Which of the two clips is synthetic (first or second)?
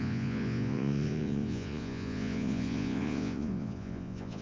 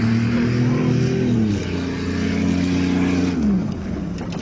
first